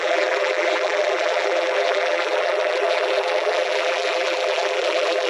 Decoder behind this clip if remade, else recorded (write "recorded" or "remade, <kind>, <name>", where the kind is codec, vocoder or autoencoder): remade, vocoder, BigVGAN v2